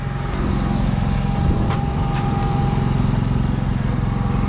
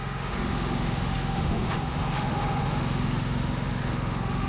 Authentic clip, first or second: first